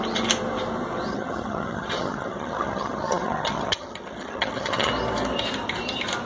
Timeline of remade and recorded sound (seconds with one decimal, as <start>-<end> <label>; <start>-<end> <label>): 0.0-1.1 recorded; 1.1-4.9 remade; 4.9-6.3 recorded